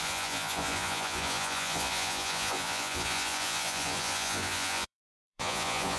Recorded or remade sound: remade